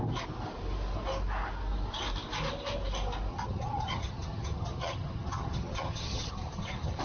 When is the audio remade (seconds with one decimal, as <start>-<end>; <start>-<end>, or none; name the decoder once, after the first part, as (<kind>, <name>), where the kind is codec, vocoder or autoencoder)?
3.3-7.0 (vocoder, HiFi-GAN)